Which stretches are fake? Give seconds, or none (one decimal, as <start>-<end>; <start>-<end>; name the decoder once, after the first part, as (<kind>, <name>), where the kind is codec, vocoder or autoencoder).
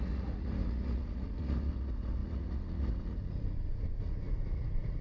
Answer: 0.0-5.0 (vocoder, Vocos)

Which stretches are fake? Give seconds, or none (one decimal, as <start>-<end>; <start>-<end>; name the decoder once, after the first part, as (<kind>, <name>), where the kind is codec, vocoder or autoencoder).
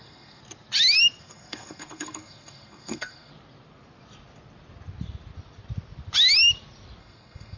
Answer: 0.0-0.4 (codec, SNAC); 1.2-3.3; 7.0-7.6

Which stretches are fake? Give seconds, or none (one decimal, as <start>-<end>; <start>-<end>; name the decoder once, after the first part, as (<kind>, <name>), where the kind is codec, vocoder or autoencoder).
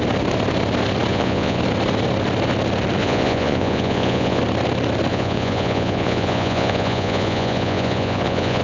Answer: 1.1-1.6 (vocoder, Vocos); 3.0-4.4; 5.1-8.6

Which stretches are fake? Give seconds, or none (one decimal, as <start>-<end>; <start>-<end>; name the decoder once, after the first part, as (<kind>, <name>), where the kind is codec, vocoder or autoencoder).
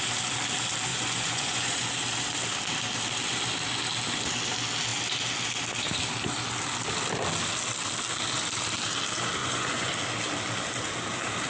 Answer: 0.9-1.9 (vocoder, Vocos); 9.4-9.9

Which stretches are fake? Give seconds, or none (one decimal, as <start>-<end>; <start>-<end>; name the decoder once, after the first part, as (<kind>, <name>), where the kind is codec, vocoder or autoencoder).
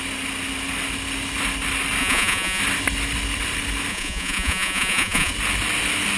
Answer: 2.0-2.6 (vocoder, Vocos); 3.9-5.3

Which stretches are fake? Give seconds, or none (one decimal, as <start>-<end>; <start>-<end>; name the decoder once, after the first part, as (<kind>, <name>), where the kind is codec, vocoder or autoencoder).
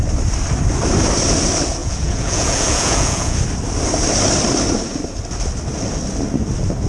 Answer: 1.8-3.4 (vocoder, Vocos)